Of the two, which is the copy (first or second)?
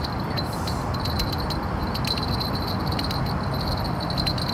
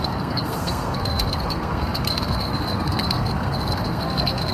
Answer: second